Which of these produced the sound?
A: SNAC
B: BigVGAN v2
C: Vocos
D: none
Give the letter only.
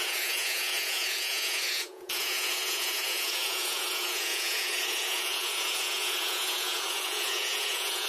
C